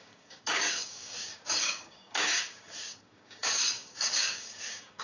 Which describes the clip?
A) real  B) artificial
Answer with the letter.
B